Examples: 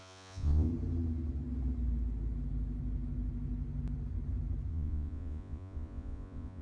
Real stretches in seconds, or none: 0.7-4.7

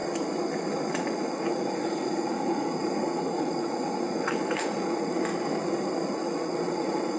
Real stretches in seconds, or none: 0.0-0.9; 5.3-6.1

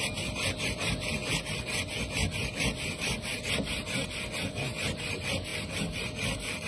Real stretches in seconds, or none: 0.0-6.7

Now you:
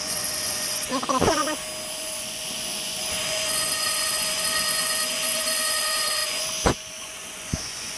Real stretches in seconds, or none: 1.4-1.9